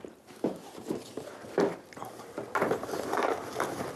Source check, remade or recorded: recorded